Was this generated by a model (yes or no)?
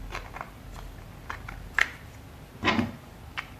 no